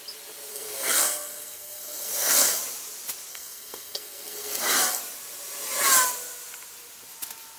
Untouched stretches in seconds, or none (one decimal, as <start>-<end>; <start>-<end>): 0.0-0.5; 2.6-3.3; 5.0-7.6